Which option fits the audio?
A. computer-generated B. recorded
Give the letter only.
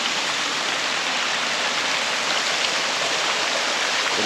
B